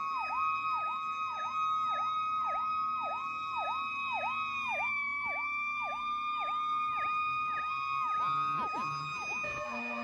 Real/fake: real